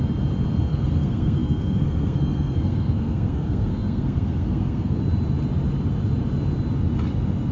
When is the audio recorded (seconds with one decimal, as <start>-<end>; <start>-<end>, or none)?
0.0-0.7; 5.0-7.5

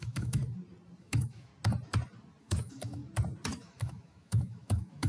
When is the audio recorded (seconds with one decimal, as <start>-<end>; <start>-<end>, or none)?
0.4-1.0; 1.5-2.4; 3.0-3.5

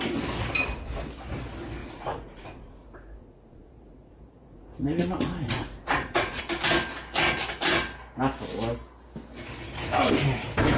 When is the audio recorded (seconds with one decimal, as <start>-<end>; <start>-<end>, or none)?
0.0-1.8; 6.4-10.8

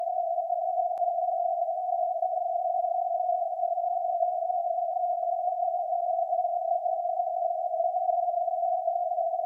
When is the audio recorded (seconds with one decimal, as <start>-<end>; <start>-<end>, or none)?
0.0-4.6; 5.3-9.5